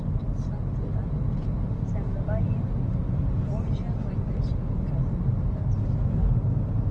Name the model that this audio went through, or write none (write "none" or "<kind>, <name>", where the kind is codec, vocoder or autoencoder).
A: none